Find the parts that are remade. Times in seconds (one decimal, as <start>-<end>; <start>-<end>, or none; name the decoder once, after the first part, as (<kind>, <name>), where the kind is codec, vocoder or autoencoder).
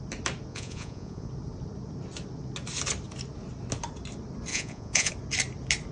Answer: 0.5-1.3 (vocoder, Vocos); 4.5-5.1